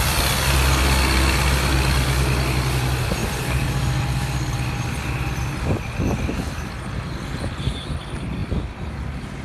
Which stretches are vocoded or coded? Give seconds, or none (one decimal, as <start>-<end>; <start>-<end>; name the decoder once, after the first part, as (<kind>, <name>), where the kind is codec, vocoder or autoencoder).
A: 8.4-8.9 (vocoder, BigVGAN v2)